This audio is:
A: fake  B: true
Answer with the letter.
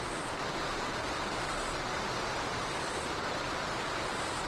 B